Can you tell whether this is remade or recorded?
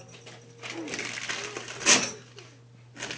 recorded